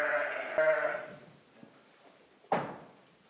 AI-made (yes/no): no